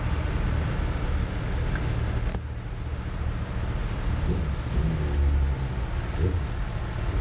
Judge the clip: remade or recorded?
recorded